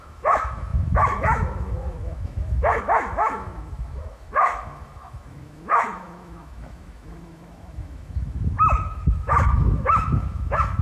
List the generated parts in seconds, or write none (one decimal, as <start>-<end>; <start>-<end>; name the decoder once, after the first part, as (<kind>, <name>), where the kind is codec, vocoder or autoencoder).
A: 0.0-10.8 (autoencoder, DAC-VAE)